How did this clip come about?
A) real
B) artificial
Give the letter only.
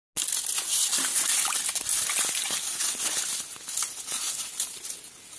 A